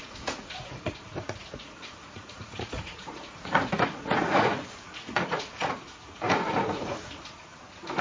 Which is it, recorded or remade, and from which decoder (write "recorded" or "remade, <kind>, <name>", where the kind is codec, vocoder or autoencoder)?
remade, vocoder, Vocos